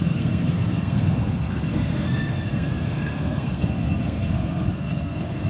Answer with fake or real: fake